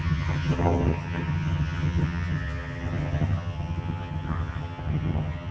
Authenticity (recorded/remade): remade